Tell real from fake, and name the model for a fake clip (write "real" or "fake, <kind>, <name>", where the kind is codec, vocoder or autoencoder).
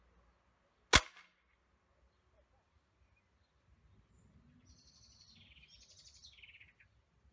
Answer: real